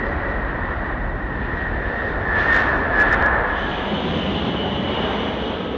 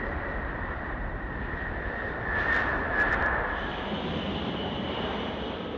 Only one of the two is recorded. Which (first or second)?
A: first